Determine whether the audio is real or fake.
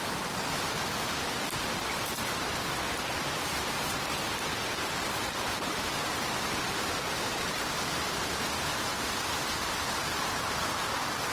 fake